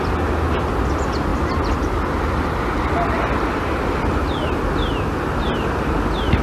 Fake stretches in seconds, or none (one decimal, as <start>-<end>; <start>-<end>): 1.3-2.6